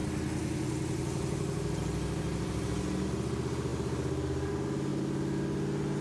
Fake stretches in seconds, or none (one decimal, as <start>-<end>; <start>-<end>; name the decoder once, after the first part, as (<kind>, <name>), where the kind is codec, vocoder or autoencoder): none